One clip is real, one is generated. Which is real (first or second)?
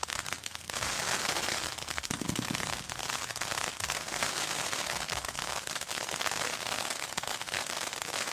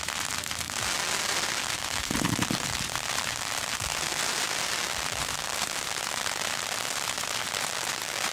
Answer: second